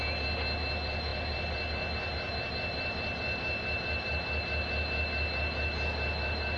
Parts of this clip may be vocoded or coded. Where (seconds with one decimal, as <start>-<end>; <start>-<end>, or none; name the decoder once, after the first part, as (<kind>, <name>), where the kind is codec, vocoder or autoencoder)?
none